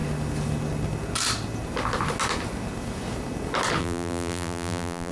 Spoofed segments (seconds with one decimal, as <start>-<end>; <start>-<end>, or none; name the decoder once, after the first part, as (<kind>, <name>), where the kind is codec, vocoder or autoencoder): 3.8-5.1 (vocoder, BigVGAN v2)

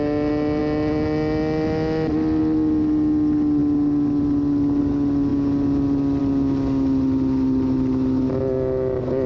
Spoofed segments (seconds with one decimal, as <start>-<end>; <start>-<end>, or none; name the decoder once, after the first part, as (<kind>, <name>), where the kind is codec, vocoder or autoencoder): none

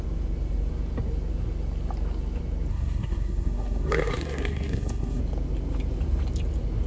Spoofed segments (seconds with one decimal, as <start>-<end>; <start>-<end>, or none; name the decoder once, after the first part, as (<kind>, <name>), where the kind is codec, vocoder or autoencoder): 2.7-5.2 (codec, SNAC)

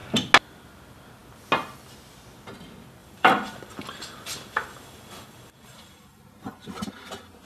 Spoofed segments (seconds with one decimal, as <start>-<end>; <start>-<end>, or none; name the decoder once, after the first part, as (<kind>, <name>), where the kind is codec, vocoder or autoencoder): 3.0-6.2 (vocoder, BigVGAN v2)

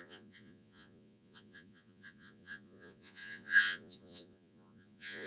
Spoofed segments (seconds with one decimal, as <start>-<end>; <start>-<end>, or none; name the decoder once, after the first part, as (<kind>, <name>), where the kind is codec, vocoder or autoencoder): 0.0-5.3 (vocoder, Vocos)

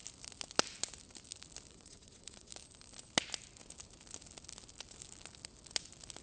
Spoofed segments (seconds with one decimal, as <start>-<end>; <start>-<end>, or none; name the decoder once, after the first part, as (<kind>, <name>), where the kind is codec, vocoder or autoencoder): 1.7-2.5 (vocoder, WaveNeXt)